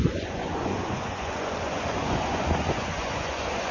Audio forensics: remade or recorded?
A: remade